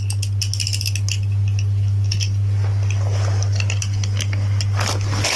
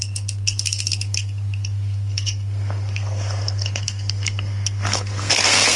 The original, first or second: first